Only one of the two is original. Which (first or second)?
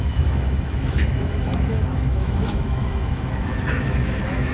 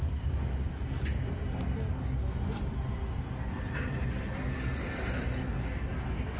second